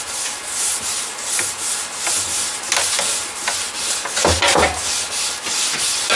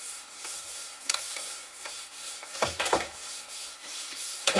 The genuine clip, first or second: first